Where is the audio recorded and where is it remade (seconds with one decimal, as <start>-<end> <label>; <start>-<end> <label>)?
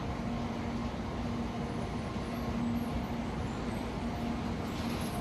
0.0-5.2 recorded